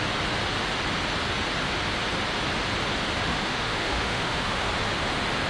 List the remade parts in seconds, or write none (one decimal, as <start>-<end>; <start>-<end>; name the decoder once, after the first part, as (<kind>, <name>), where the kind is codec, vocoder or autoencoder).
3.3-4.7 (autoencoder, DAC-VAE)